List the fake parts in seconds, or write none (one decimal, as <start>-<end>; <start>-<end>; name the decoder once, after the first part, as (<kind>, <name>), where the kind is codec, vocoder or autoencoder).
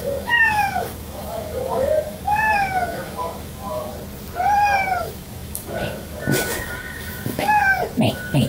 0.0-3.9 (codec, DAC); 5.0-7.6; 8.1-8.5